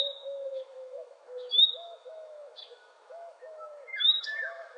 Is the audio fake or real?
fake